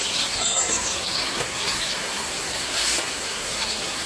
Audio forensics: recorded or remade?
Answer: remade